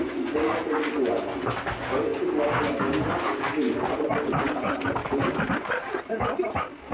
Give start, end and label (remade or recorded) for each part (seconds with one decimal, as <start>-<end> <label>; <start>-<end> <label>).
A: 0.0-5.0 recorded; 5.0-6.0 remade; 6.0-6.9 recorded